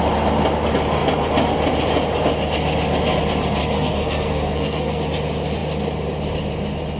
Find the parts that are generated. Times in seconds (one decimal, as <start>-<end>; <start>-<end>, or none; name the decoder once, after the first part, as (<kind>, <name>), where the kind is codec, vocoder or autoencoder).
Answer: 3.6-5.0 (codec, SNAC)